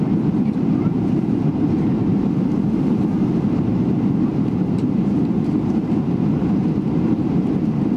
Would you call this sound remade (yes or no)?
yes